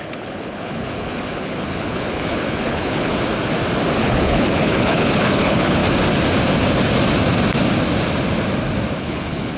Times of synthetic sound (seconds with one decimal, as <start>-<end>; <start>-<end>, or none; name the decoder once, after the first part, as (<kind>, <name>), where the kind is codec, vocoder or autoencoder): 0.0-3.1 (codec, HILCodec); 4.0-5.8; 9.0-9.6